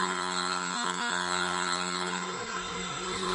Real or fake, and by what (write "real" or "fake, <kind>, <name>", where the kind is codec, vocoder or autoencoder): fake, codec, SNAC